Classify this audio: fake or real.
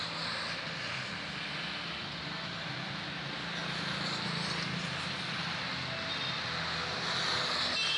real